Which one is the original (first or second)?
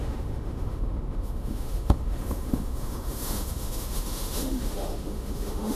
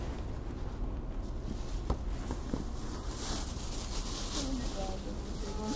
second